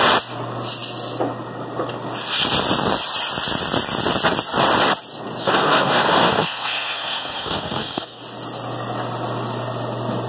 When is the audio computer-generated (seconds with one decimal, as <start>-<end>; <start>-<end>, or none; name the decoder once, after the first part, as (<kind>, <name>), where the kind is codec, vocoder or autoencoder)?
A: 5.4-8.2 (codec, SNAC)